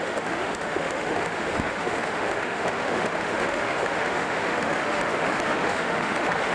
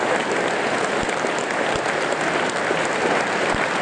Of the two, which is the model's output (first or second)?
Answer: first